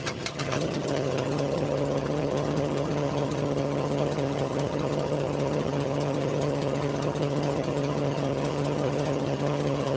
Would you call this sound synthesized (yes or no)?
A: yes